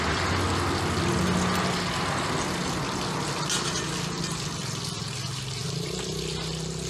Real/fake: real